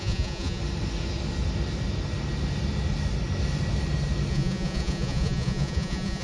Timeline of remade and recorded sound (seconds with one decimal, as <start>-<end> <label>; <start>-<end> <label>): 0.0-0.6 remade; 0.6-4.3 recorded; 4.3-6.2 remade